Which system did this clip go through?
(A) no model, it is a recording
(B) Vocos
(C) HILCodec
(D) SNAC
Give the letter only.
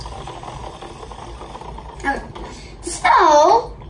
A